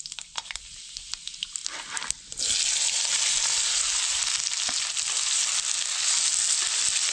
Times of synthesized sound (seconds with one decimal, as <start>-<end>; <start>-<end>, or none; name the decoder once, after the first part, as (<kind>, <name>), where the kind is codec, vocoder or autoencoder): none